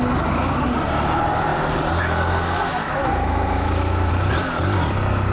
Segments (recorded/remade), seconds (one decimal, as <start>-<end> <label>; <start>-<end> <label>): 0.0-2.8 recorded; 2.8-4.1 remade; 4.1-5.3 recorded